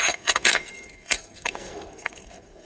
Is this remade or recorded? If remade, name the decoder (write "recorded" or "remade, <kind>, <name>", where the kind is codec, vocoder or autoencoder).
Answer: remade, codec, SNAC